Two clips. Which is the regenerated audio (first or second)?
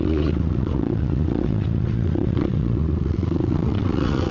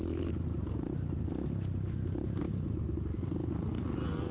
first